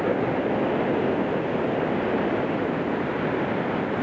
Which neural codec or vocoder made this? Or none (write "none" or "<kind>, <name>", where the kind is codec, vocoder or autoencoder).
none